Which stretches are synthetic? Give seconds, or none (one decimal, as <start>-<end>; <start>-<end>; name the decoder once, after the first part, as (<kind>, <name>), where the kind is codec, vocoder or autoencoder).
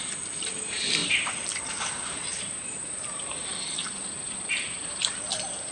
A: 0.0-1.0 (vocoder, BigVGAN v2); 1.6-5.7